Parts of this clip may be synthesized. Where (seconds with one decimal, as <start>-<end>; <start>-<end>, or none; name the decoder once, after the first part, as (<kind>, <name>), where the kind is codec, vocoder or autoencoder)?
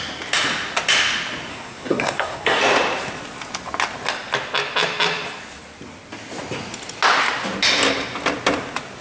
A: 1.5-2.6 (codec, SNAC)